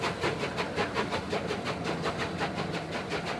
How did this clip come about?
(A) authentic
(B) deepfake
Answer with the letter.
A